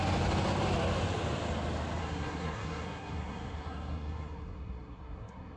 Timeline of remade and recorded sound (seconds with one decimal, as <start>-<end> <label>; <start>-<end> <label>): 0.0-2.0 recorded; 2.0-5.6 remade